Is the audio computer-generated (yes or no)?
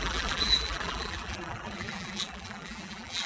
yes